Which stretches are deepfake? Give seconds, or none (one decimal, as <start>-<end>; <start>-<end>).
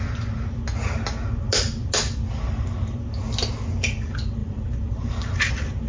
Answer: 4.4-5.5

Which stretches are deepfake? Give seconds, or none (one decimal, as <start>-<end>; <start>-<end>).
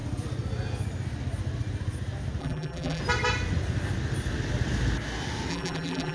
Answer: 2.4-3.0; 5.5-6.1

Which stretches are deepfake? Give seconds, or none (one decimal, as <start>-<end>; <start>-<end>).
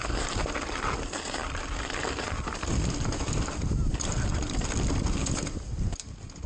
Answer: none